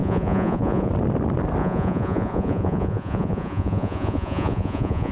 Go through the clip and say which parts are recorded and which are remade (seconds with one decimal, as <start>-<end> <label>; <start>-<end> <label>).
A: 0.0-0.9 remade; 0.9-1.6 recorded; 1.6-5.1 remade